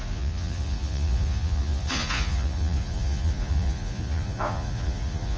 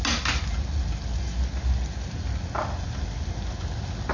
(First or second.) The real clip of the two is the second